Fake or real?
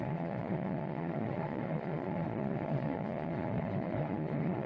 fake